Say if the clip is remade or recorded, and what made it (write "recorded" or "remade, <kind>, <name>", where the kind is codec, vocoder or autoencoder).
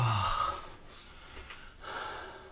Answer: recorded